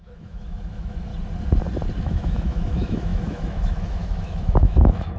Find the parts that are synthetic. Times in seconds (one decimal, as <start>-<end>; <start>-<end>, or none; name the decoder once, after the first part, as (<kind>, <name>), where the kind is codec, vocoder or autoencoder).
0.0-1.1 (autoencoder, DAC-VAE); 2.0-5.2